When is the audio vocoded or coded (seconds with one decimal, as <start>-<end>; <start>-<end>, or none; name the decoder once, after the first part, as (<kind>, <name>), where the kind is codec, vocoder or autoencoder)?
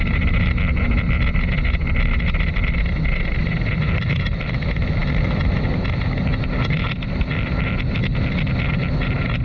none